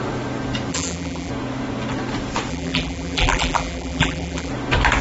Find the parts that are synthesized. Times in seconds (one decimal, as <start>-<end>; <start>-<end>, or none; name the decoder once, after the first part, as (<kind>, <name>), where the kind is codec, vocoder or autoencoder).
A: 0.7-1.3 (vocoder, BigVGAN v2); 2.5-4.5